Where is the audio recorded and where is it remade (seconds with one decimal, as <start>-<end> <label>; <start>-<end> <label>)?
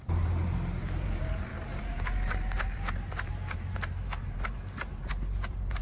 0.0-5.8 remade